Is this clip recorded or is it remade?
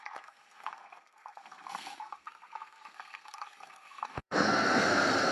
remade